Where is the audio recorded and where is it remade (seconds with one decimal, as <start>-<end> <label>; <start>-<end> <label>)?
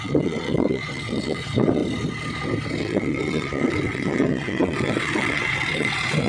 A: 0.0-1.8 remade; 1.8-2.8 recorded; 2.8-6.3 remade